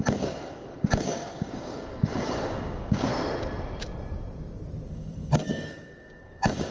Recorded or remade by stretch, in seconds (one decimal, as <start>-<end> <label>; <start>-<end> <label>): 0.0-3.1 remade; 3.1-4.9 recorded; 4.9-6.7 remade